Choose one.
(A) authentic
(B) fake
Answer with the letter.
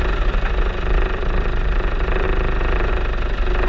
B